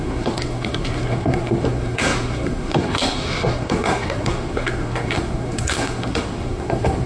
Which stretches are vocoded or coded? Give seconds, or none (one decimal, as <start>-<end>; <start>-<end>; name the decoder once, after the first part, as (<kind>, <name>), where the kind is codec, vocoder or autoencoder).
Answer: 0.0-7.1 (codec, SNAC)